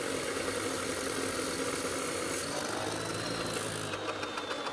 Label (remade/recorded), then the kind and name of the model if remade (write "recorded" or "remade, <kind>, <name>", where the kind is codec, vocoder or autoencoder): recorded